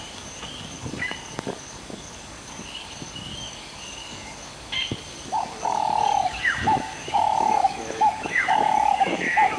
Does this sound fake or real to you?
fake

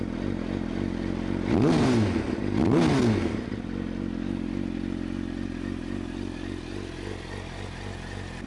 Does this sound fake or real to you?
real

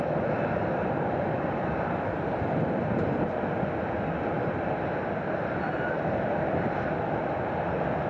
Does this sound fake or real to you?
real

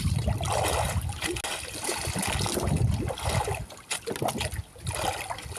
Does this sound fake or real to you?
real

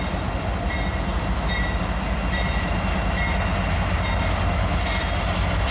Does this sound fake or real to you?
real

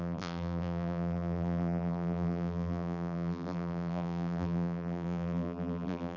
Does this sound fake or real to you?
fake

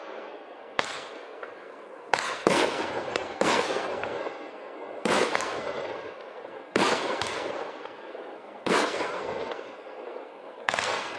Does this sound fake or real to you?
fake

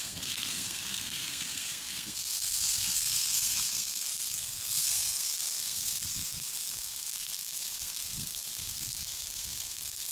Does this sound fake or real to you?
fake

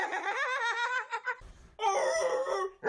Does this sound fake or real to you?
real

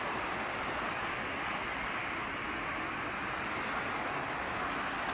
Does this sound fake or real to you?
real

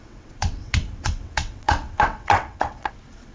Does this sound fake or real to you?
fake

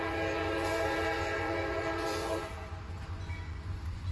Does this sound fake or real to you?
fake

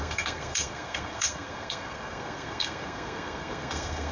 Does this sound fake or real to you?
fake